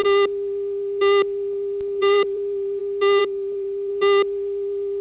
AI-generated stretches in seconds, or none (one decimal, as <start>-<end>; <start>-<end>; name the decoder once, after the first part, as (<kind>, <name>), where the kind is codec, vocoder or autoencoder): 2.0-2.8 (vocoder, BigVGAN v2); 3.2-3.9

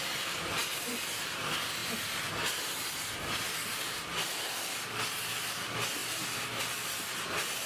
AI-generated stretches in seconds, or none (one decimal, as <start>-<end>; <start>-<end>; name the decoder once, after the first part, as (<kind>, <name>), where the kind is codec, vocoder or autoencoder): none

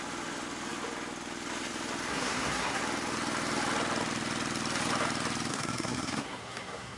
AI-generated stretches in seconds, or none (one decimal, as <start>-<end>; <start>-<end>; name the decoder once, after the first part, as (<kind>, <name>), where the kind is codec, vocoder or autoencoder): 2.1-2.8 (codec, SNAC); 5.5-7.0